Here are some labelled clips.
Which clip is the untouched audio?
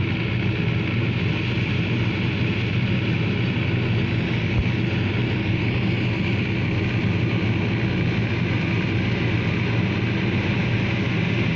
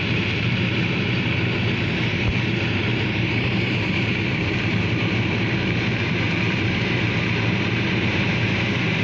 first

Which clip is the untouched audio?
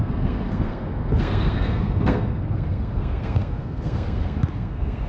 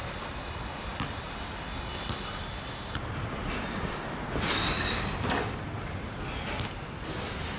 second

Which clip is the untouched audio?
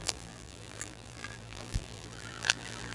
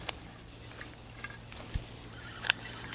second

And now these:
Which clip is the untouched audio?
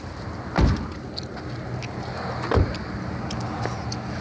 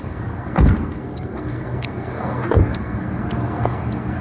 first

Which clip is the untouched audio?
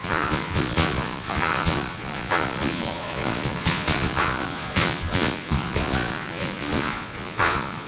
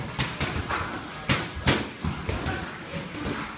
second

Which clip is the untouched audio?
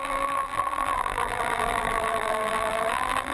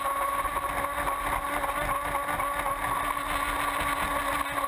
second